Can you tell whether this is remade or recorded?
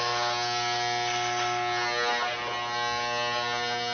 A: recorded